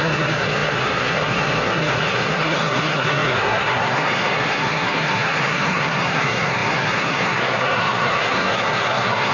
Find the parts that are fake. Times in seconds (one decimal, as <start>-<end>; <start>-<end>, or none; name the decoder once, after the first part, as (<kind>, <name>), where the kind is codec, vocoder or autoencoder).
0.0-9.3 (codec, SNAC)